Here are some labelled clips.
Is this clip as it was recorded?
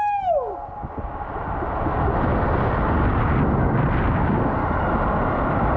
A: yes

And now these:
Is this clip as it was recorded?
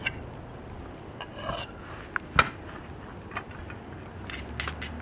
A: yes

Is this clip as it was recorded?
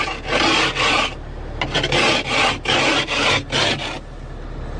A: yes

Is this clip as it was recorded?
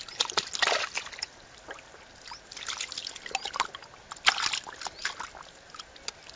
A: yes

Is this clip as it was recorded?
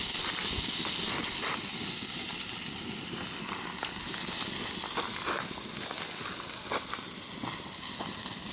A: yes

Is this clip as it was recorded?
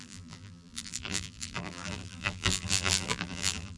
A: no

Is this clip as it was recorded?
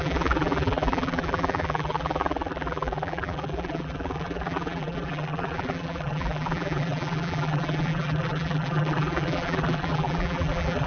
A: no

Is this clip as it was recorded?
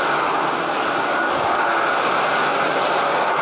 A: yes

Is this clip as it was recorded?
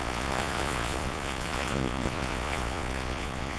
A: no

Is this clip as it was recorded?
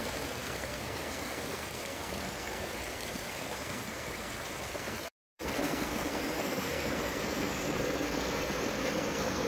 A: no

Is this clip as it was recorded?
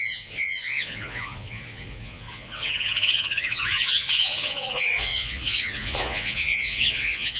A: no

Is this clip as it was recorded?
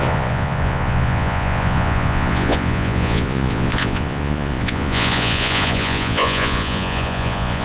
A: no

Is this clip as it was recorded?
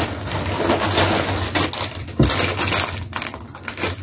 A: yes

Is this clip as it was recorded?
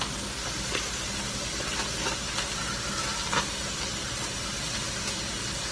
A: yes